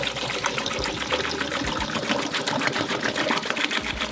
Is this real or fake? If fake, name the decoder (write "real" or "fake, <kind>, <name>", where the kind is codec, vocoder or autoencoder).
real